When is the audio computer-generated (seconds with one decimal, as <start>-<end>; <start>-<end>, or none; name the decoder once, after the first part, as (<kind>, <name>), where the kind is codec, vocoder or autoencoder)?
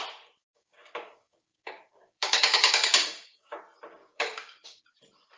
0.4-3.6 (codec, DAC); 4.0-4.8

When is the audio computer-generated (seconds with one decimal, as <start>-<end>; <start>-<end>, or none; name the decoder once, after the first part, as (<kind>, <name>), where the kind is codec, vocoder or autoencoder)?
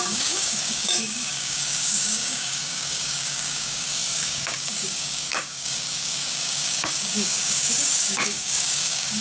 0.0-9.2 (codec, DAC)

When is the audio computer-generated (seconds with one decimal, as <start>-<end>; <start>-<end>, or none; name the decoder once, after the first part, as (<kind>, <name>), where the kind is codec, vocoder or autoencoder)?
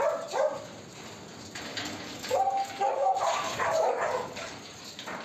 1.7-4.8 (codec, DAC)